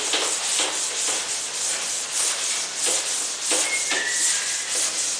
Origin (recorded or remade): recorded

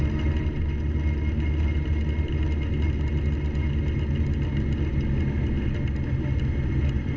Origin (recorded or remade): recorded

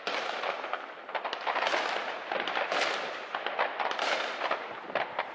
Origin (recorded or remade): recorded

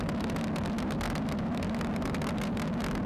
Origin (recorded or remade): recorded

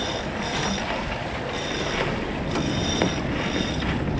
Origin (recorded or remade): recorded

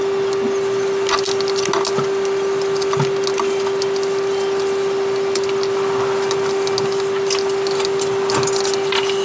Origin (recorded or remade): recorded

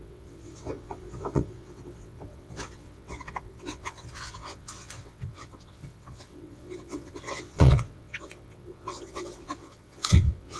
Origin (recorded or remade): remade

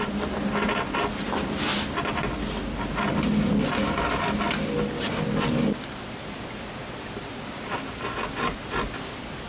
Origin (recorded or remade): recorded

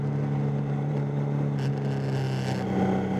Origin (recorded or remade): recorded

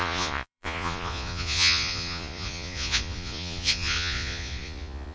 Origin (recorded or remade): remade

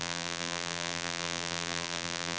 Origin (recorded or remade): remade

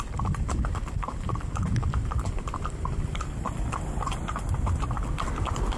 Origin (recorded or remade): recorded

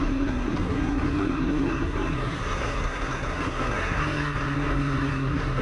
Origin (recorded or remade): remade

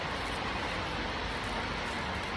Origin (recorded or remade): recorded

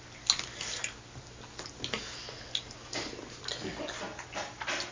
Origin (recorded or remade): recorded